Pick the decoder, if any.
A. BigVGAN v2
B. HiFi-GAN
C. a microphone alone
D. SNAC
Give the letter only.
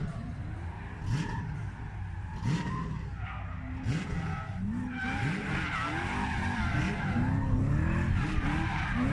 C